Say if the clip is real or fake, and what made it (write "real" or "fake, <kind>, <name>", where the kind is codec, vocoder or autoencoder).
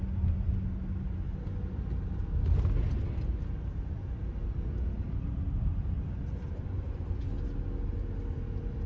real